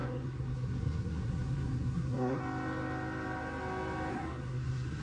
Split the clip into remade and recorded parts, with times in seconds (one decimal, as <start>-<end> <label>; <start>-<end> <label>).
0.0-2.4 remade; 2.4-4.1 recorded; 4.1-5.0 remade